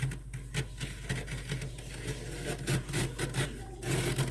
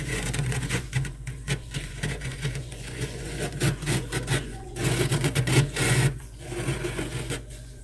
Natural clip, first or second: first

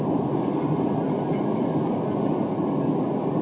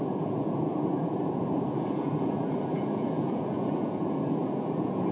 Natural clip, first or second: first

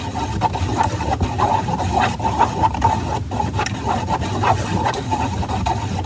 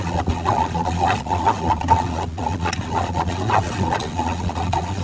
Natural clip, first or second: first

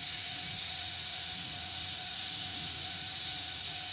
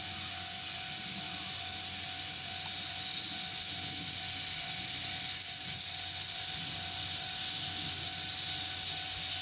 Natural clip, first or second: second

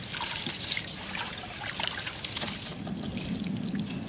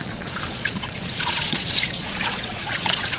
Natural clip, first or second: first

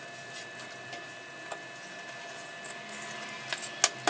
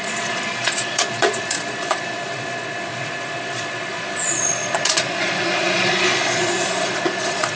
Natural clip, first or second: first